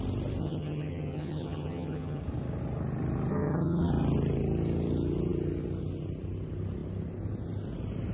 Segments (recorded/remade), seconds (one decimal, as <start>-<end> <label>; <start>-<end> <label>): 0.0-0.4 recorded; 0.4-2.2 remade; 2.2-3.3 recorded; 3.3-3.9 remade; 3.9-8.1 recorded